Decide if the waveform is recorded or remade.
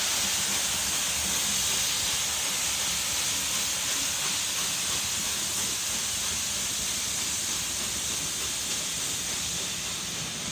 recorded